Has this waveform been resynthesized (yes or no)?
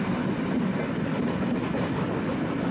no